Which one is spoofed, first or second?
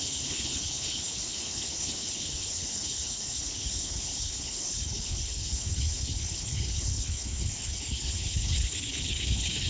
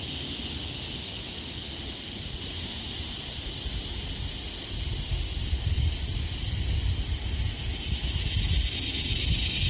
first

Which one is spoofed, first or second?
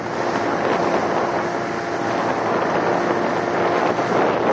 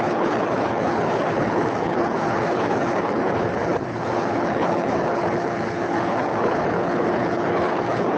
second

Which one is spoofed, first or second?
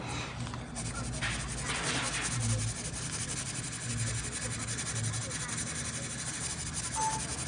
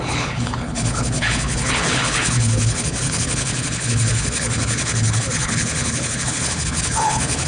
second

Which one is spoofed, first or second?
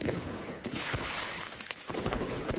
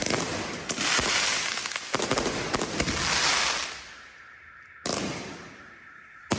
first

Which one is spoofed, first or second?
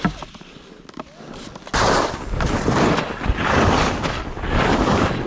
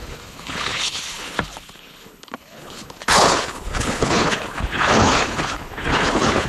second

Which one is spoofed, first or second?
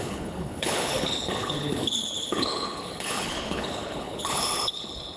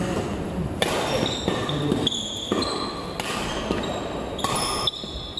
first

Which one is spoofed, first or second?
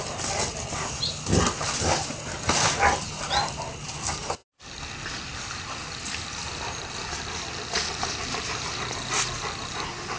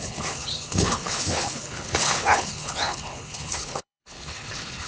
second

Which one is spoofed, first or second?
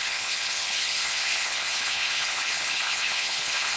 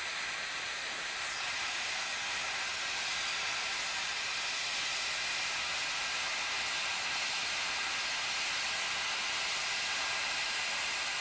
first